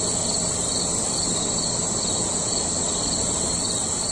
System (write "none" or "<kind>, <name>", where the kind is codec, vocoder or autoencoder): none